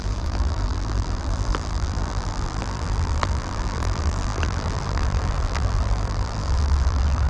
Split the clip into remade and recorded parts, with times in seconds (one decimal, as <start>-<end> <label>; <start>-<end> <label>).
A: 0.0-7.3 remade